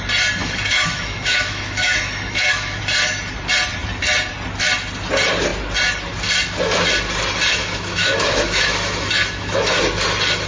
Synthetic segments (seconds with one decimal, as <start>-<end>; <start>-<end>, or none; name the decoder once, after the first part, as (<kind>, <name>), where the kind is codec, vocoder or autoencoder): 0.4-2.8 (autoencoder, DAC-VAE); 7.5-9.8